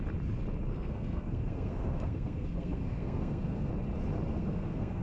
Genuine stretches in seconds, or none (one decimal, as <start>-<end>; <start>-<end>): 0.0-0.7; 3.7-4.3